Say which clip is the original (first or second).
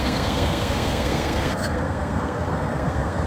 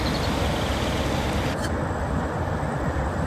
second